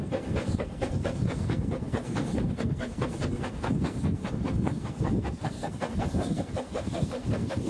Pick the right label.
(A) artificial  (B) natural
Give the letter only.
A